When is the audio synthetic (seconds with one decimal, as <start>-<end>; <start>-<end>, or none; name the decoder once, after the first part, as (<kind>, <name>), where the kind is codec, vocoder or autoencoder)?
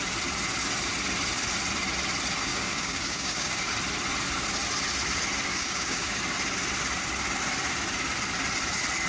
2.5-3.7 (codec, DAC); 5.5-6.2